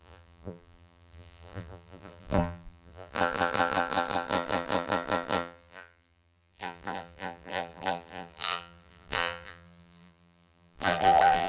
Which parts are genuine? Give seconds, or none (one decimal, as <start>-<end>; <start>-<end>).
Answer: none